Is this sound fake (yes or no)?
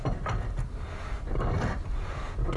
no